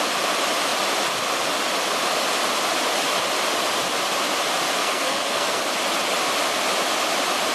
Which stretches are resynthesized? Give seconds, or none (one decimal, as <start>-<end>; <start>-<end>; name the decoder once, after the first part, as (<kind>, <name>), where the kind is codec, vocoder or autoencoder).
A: 4.8-5.6 (codec, SNAC)